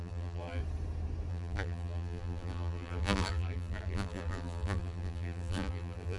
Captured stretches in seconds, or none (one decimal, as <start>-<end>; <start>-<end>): 0.6-1.3